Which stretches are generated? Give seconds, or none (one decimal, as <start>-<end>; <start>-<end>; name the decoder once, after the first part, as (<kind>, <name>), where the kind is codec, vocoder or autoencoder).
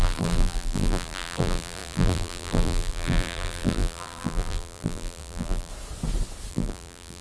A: 0.0-5.7 (vocoder, BigVGAN v2); 6.5-7.2